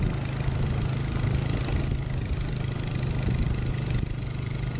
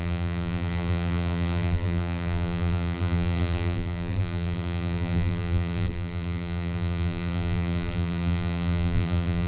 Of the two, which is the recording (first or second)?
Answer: first